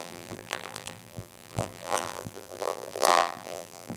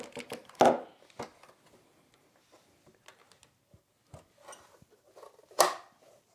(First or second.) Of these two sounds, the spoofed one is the first